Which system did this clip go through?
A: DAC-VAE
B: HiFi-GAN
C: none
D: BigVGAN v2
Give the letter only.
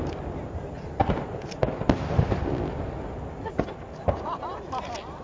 C